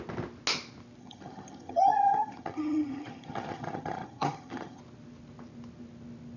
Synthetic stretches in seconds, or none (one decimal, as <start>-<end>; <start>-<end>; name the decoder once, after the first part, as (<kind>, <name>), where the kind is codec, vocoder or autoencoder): 1.0-4.8 (vocoder, HiFi-GAN)